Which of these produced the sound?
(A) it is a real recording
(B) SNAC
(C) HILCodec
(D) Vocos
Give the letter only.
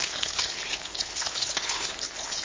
C